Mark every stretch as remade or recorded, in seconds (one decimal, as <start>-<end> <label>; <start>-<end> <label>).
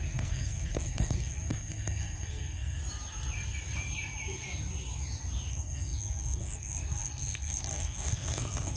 0.0-2.8 remade; 2.8-5.5 recorded; 5.5-8.8 remade